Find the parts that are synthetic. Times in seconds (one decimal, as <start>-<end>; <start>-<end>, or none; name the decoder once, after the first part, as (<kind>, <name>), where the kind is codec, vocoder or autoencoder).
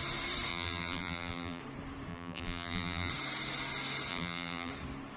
0.5-1.6 (vocoder, BigVGAN v2); 2.1-3.1; 4.1-4.7